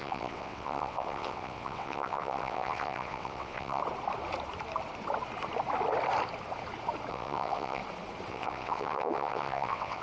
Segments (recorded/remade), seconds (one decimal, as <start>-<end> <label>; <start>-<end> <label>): 0.0-3.8 remade; 3.8-7.1 recorded; 7.1-7.8 remade; 7.8-8.3 recorded; 8.3-10.0 remade